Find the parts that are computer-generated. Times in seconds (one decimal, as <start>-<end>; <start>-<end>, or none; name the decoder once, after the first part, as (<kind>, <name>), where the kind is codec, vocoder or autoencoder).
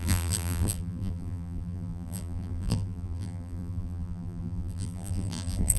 0.0-5.8 (vocoder, BigVGAN v2)